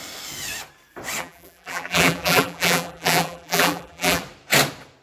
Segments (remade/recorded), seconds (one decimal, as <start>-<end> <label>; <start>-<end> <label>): 0.0-1.2 recorded; 1.2-4.2 remade; 4.2-5.0 recorded